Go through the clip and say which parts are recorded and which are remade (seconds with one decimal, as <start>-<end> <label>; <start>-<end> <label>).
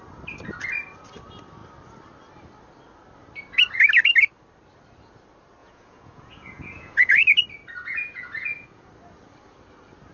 0.0-5.6 recorded; 5.6-7.2 remade; 7.2-7.8 recorded; 7.8-8.9 remade; 8.9-10.1 recorded